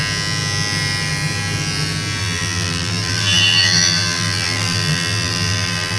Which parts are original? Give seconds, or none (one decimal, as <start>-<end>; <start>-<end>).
0.0-2.2